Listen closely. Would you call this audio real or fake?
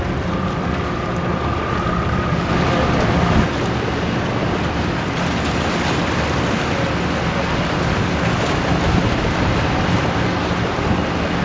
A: real